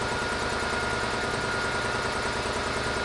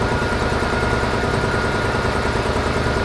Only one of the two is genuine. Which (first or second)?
first